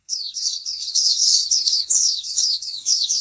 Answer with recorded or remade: remade